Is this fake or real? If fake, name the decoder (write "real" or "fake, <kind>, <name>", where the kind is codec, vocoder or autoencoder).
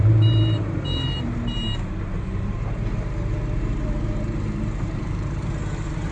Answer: fake, vocoder, BigVGAN v2